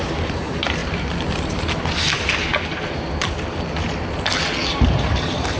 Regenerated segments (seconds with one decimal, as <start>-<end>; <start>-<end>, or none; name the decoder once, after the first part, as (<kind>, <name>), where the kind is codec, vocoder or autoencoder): 0.0-0.8 (vocoder, BigVGAN v2); 1.5-2.5; 4.7-5.6